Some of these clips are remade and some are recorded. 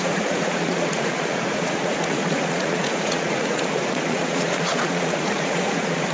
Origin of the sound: remade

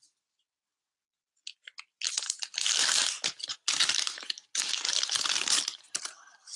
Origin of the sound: recorded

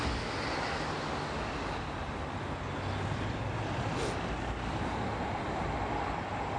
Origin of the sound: recorded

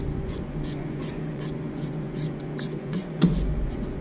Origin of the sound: remade